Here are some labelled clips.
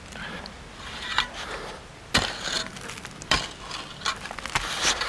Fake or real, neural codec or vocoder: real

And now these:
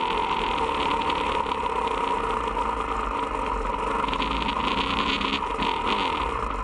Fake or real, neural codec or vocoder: real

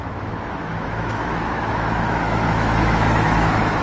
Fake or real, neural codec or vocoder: fake, autoencoder, DAC-VAE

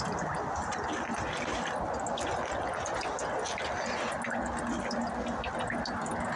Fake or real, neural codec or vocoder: real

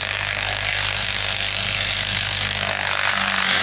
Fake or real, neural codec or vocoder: fake, codec, SNAC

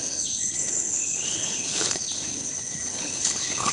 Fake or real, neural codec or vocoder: fake, codec, HILCodec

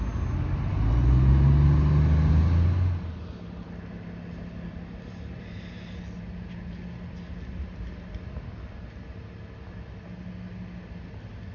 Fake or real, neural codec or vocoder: real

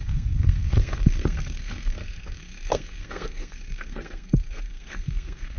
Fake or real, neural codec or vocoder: fake, codec, SNAC